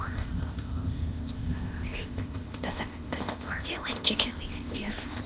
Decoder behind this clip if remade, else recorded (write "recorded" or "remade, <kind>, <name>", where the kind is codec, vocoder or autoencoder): remade, codec, ZipCodec